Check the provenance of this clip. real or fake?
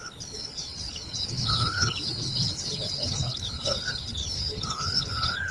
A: fake